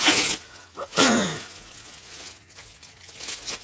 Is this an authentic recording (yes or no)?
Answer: no